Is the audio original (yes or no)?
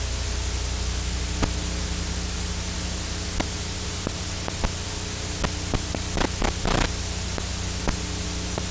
yes